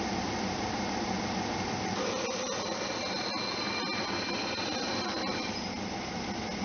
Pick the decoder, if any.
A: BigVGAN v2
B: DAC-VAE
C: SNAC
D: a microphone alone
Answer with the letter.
A